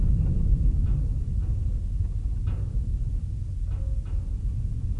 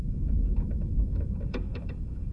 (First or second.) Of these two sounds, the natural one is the first